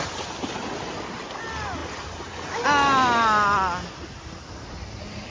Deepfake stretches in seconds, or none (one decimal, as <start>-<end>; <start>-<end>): none